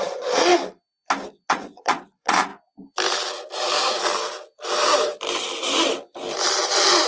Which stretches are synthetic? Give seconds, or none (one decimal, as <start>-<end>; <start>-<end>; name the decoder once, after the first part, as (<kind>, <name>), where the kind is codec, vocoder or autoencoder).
0.0-0.5 (vocoder, Vocos); 1.5-2.5